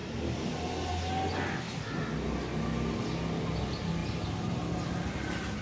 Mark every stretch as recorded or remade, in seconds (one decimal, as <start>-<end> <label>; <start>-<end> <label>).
0.0-5.6 recorded